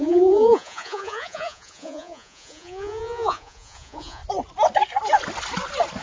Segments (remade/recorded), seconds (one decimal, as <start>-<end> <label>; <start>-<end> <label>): 0.0-4.2 remade; 4.2-6.0 recorded